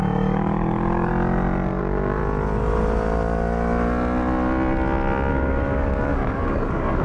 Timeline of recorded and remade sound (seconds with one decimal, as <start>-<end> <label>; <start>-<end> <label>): 0.0-1.1 remade; 1.1-1.8 recorded; 1.8-2.2 remade; 2.2-5.3 recorded; 5.3-7.0 remade